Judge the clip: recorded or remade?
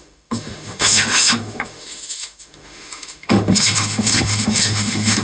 remade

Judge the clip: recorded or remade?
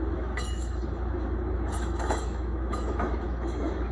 remade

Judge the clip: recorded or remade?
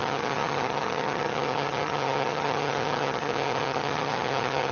remade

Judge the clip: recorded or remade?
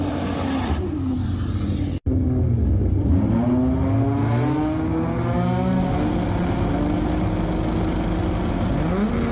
recorded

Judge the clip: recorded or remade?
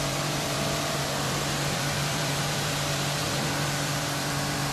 remade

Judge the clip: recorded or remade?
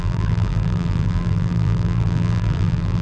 remade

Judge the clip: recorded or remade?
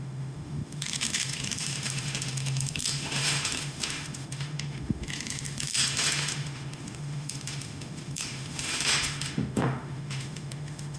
remade